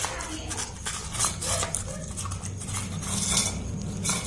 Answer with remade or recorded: recorded